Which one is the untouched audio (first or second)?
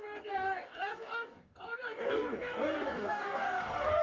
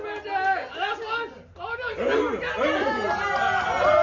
second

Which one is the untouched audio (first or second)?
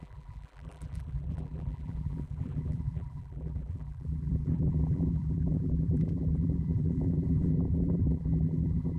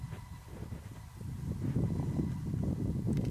second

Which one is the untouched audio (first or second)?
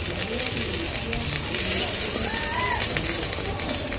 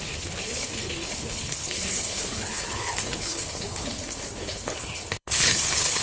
first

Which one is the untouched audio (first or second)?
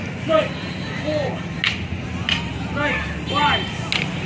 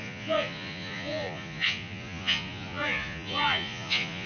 first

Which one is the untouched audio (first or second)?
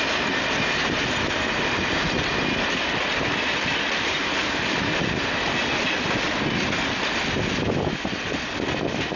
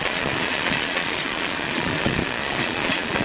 first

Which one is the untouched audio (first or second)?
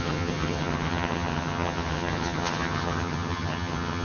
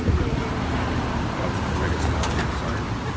second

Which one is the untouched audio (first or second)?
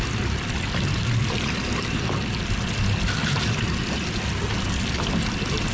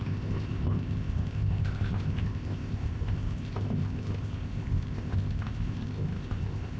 first